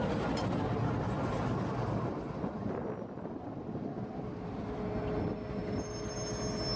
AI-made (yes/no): no